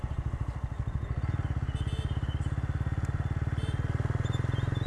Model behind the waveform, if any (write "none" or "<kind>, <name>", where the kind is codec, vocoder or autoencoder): none